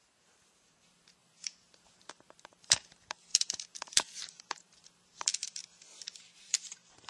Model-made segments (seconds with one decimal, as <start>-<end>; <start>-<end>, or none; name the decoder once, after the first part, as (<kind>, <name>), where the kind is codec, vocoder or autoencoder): 0.0-5.6 (vocoder, BigVGAN v2); 6.2-7.1